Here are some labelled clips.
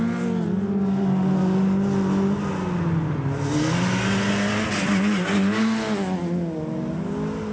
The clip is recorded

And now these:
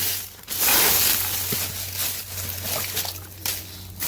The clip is recorded